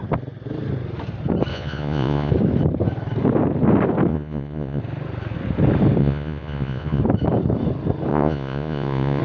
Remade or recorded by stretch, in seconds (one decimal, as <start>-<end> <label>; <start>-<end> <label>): 0.0-1.5 recorded; 1.5-2.3 remade; 2.3-4.1 recorded; 4.1-4.8 remade; 4.8-6.0 recorded; 6.0-7.0 remade; 7.0-8.1 recorded; 8.1-9.2 remade